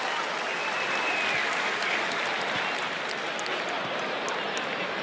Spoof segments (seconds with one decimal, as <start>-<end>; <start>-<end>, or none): 1.4-2.2